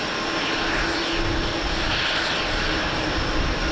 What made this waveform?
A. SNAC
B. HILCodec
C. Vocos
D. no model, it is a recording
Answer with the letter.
D